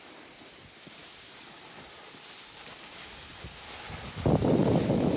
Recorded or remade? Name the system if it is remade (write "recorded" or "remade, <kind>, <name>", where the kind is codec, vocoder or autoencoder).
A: recorded